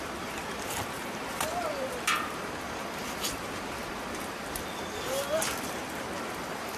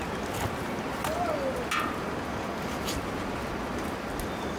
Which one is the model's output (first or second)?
first